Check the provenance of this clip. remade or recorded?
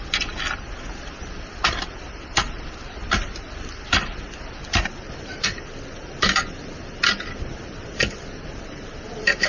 recorded